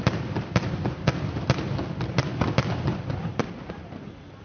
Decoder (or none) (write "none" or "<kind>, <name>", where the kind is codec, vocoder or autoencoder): vocoder, BigVGAN v2